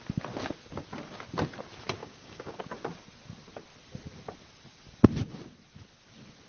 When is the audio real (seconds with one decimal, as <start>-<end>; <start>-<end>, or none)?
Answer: 0.0-2.0; 2.6-6.5